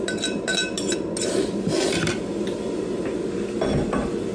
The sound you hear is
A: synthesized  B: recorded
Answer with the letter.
B